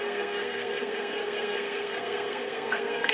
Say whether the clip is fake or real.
fake